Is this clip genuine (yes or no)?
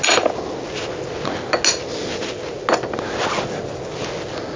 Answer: yes